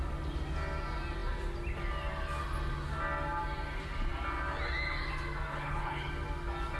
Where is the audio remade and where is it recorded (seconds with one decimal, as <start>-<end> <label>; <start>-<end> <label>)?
0.0-5.5 recorded; 5.5-6.1 remade; 6.1-6.8 recorded